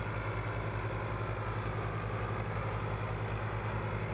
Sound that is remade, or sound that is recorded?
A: recorded